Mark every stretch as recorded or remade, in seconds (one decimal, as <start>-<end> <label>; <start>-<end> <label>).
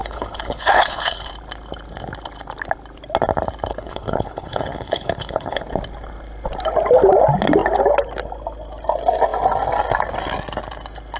0.0-1.3 remade; 1.3-3.7 recorded; 3.7-5.6 remade; 5.6-11.2 recorded